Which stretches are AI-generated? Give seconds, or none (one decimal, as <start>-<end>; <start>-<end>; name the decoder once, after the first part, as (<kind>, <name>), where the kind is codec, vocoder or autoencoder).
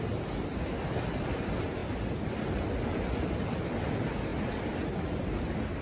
1.8-3.9 (vocoder, BigVGAN v2)